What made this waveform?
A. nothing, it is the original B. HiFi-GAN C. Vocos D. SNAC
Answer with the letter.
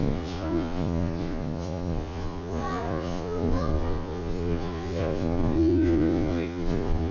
C